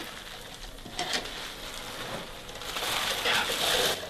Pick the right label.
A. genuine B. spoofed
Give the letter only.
A